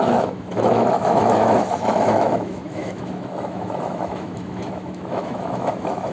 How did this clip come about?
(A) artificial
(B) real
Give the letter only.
A